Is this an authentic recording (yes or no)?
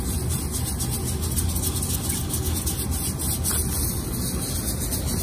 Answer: yes